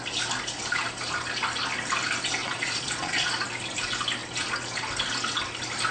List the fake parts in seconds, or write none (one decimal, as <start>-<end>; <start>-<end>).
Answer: 2.4-3.3